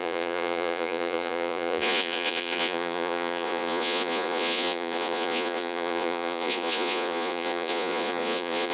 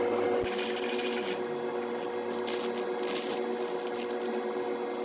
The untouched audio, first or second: second